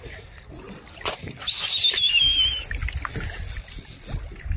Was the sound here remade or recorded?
recorded